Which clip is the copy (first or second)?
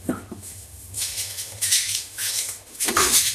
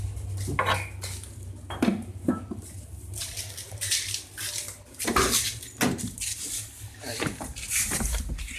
first